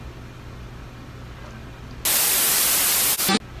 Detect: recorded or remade recorded